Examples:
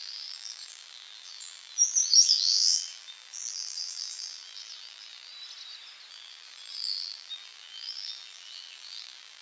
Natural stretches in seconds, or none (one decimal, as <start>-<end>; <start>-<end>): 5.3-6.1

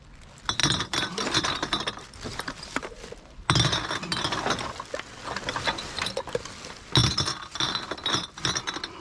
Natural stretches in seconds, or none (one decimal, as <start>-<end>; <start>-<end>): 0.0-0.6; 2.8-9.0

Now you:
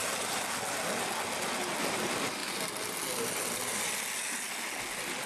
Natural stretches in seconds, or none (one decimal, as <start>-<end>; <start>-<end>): 0.0-5.3